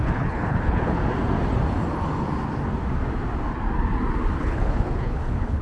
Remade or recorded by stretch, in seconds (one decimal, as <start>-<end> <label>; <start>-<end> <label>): 0.0-1.0 remade; 1.0-4.4 recorded; 4.4-5.6 remade